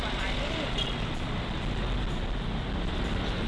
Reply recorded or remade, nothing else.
recorded